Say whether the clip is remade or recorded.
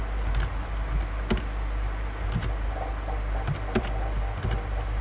recorded